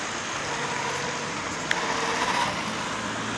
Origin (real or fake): real